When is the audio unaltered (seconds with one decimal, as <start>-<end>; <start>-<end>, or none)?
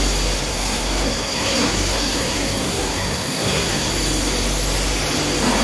0.0-0.5; 3.9-5.6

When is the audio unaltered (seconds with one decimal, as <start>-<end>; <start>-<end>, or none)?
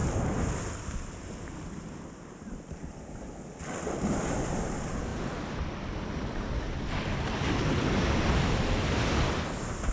0.0-9.9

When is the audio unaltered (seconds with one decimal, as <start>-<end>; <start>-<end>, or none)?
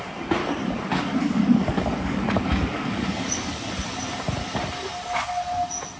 0.0-0.4; 3.7-6.0